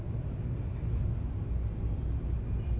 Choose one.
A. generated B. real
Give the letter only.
B